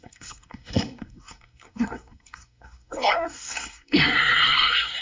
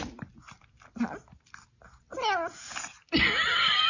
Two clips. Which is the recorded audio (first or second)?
second